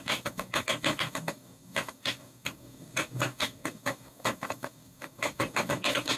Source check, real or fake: fake